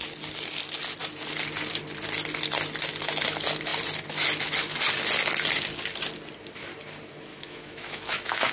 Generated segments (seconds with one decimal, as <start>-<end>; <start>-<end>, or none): 7.3-8.5